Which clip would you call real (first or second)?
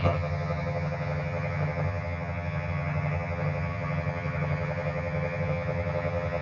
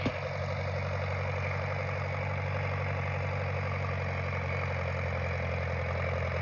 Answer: second